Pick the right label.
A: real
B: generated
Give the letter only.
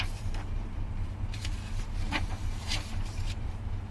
B